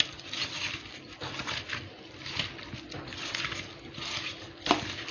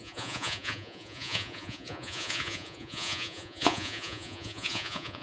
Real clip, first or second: first